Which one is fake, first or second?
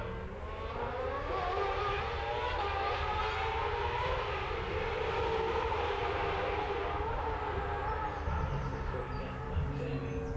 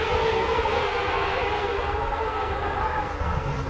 second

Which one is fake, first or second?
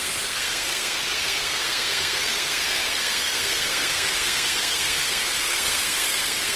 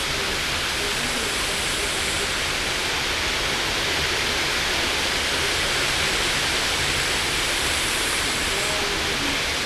first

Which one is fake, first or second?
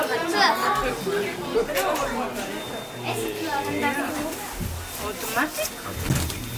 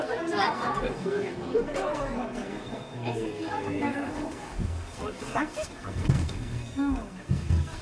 second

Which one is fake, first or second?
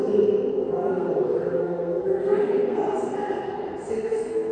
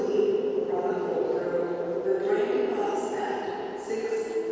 first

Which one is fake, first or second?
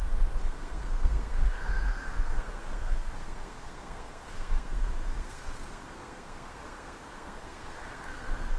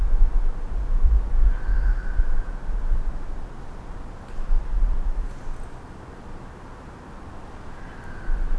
first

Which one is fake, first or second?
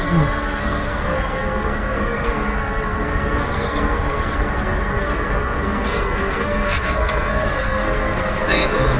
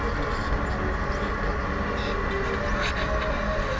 first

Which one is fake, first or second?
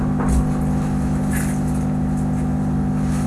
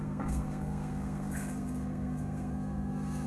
second